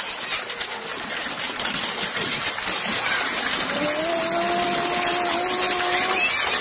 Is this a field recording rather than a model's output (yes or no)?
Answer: yes